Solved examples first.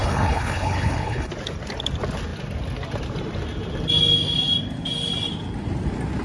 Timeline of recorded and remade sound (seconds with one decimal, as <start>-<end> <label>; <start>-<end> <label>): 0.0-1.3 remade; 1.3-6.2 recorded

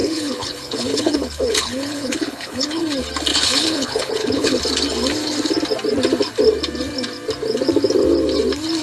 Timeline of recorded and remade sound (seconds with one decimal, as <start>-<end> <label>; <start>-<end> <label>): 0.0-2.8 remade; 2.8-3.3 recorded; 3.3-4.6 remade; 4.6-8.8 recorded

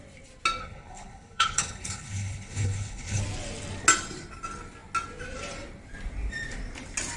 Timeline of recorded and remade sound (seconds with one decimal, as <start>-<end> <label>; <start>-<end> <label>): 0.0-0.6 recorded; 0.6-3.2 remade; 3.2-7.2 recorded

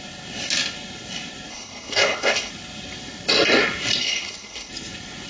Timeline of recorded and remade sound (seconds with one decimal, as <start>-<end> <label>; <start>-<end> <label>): 0.0-1.5 recorded; 1.5-2.5 remade; 2.5-4.0 recorded; 4.0-4.7 remade; 4.7-5.3 recorded